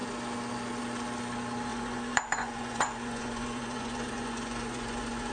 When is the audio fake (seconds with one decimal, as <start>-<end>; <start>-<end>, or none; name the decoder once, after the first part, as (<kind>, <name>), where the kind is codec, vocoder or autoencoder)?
1.7-5.3 (vocoder, Vocos)